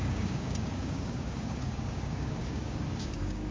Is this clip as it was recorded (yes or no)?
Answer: no